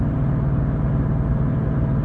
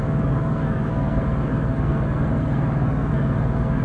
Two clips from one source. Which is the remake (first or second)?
second